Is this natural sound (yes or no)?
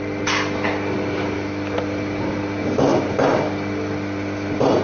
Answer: yes